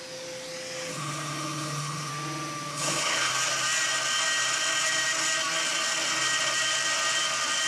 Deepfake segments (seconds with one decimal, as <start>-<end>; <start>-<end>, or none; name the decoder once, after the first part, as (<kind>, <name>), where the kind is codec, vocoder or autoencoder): 0.9-2.1 (codec, HILCodec); 2.7-3.3